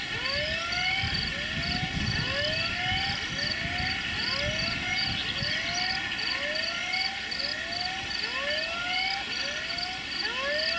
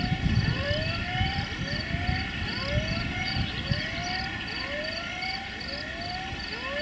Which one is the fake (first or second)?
second